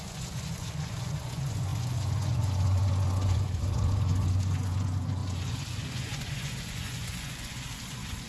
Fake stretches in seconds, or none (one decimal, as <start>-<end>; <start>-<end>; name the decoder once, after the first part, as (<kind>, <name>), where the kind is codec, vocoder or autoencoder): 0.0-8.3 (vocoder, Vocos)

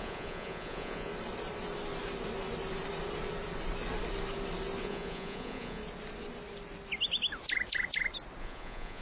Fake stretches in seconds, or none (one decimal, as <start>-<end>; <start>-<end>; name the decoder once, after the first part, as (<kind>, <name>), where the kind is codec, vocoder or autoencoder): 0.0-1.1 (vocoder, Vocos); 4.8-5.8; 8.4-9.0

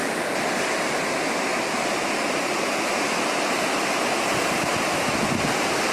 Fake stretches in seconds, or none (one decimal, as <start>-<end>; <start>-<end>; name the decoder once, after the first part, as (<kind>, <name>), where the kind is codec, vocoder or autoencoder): none

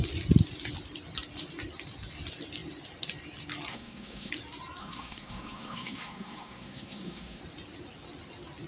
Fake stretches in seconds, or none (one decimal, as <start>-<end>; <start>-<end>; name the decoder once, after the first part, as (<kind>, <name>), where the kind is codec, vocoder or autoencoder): 3.7-4.3 (codec, SNAC); 4.8-7.4

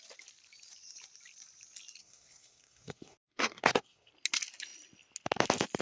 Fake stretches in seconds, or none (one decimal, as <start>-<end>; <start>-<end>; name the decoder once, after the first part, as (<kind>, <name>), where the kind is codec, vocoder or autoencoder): 2.0-4.1 (codec, SNAC)

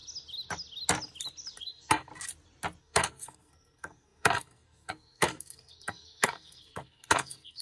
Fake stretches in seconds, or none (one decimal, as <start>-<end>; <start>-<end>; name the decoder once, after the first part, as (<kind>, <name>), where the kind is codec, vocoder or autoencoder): 1.6-2.1 (codec, SNAC); 2.8-7.6

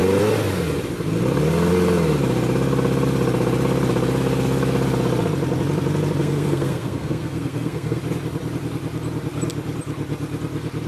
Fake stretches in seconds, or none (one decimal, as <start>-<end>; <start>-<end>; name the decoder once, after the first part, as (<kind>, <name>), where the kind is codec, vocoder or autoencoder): 6.2-8.0 (codec, SNAC)

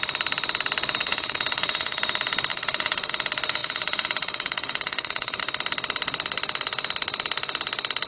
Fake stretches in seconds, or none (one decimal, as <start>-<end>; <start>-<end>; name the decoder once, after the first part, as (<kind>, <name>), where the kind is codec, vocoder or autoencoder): 1.0-2.0 (vocoder, WaveNeXt); 2.5-3.1; 3.6-5.4